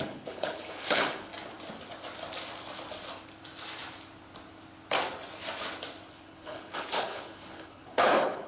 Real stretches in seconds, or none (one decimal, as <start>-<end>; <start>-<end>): 1.3-6.1